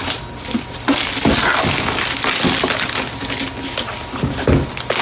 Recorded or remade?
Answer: recorded